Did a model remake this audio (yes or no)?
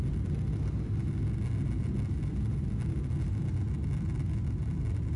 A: no